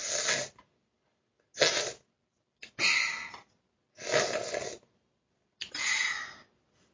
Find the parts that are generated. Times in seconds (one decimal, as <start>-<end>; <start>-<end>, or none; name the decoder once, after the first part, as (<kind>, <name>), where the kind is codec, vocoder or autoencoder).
none